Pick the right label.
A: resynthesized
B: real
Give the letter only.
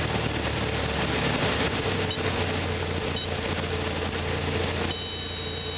B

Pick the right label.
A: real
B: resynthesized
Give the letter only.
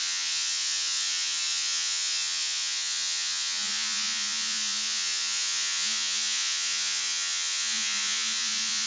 B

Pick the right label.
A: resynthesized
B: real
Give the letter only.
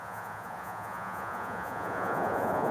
A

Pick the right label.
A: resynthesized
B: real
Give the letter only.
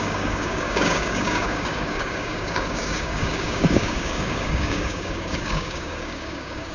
A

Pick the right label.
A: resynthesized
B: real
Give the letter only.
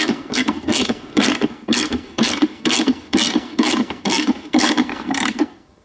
A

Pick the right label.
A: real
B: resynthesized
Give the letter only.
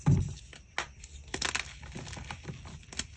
A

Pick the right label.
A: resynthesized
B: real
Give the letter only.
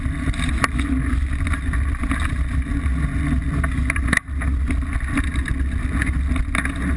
B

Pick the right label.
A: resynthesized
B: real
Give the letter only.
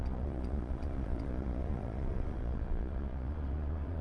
A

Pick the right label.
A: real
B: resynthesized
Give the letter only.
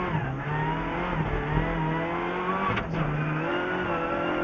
A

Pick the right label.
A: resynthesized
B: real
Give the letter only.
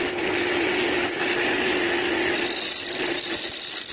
B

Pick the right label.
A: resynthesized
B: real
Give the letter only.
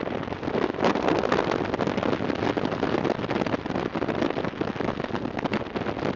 B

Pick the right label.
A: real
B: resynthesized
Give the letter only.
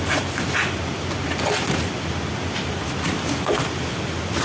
A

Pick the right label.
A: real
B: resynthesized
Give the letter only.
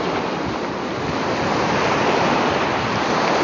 A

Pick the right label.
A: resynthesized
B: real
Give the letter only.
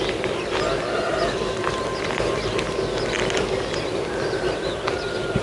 B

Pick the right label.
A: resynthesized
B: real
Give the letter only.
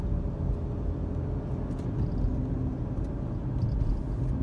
B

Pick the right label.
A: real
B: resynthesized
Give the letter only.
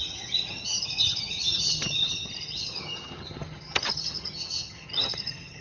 B